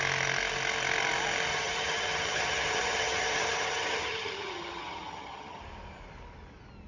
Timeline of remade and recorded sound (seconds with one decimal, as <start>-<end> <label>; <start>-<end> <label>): 0.0-1.5 recorded; 1.5-5.6 remade; 5.6-6.9 recorded

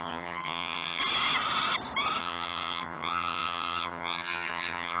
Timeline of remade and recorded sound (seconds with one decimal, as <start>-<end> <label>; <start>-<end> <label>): 0.0-1.0 remade; 1.0-2.2 recorded; 2.2-5.0 remade

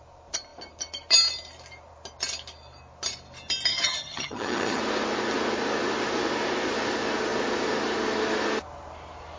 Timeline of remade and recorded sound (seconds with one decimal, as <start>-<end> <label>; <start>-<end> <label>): 0.0-3.7 recorded; 3.7-4.8 remade; 4.8-9.4 recorded

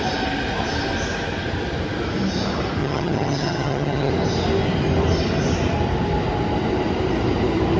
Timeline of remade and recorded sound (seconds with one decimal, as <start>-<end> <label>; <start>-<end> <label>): 0.0-2.8 recorded; 2.8-4.1 remade; 4.1-7.8 recorded

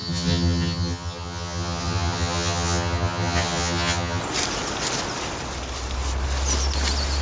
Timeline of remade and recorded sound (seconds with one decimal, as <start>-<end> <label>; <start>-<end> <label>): 0.0-4.2 remade; 4.2-7.2 recorded